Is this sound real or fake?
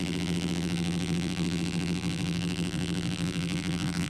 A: fake